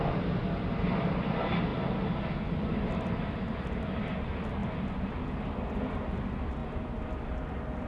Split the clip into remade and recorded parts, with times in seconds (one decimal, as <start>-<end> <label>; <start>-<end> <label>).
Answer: 0.0-7.9 recorded